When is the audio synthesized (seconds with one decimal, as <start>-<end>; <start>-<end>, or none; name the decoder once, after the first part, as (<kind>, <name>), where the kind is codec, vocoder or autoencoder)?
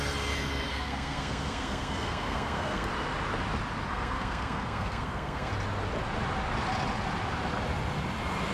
0.7-2.9 (codec, SNAC); 3.9-5.5